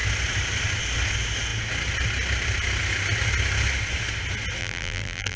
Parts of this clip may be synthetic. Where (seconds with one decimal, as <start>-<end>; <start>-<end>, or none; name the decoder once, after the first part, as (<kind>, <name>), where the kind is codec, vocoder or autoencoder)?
4.6-5.4 (vocoder, BigVGAN v2)